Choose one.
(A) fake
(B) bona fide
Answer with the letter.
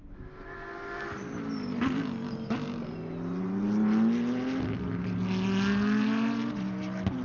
B